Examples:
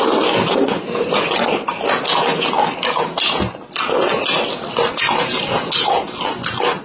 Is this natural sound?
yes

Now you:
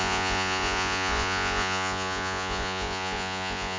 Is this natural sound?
no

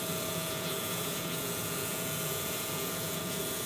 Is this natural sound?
no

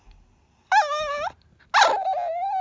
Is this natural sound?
yes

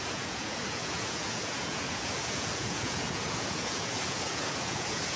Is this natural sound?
no